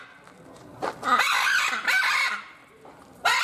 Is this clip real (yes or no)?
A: yes